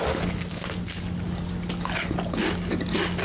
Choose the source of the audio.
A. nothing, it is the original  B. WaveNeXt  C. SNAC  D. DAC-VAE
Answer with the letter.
A